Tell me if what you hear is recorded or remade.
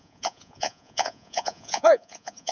remade